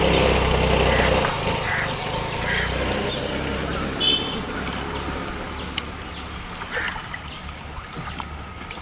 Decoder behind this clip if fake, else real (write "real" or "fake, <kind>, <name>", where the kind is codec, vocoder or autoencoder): real